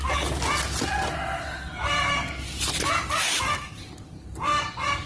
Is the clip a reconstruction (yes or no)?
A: no